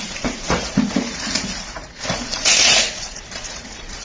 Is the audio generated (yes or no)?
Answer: yes